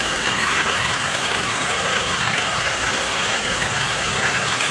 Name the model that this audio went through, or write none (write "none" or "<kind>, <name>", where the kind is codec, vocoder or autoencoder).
codec, SNAC